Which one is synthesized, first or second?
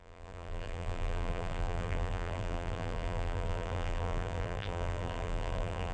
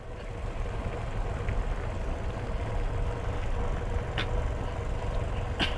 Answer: first